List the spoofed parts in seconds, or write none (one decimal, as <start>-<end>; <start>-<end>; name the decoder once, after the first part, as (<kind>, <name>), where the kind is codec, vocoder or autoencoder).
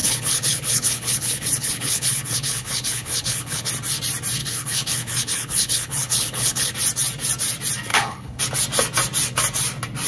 0.0-3.7 (codec, HILCodec); 4.4-6.7; 7.9-8.4